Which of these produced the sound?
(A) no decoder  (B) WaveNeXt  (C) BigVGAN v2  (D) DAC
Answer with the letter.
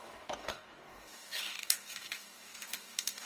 D